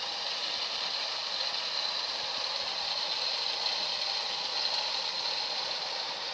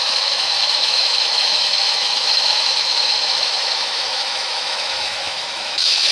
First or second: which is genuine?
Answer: first